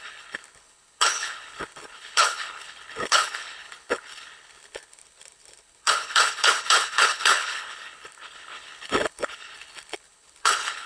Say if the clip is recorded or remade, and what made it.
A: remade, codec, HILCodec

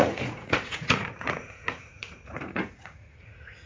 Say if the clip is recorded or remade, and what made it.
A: remade, vocoder, Vocos